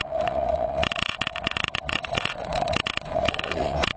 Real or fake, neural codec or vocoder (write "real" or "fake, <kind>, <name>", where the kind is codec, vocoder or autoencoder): fake, vocoder, WaveNeXt